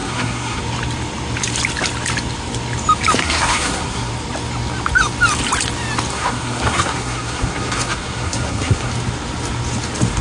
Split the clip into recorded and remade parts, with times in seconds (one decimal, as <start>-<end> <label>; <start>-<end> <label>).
0.0-0.6 remade; 0.6-3.2 recorded; 3.2-4.1 remade; 4.1-6.1 recorded; 6.1-8.9 remade; 8.9-10.2 recorded